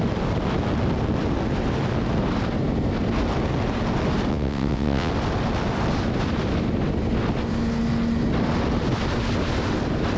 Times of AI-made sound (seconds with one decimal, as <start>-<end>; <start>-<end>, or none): 4.3-5.1